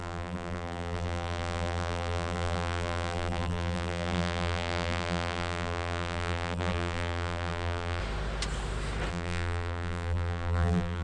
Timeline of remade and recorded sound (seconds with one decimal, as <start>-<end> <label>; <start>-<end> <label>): 0.0-8.0 remade; 8.0-9.1 recorded; 9.1-11.0 remade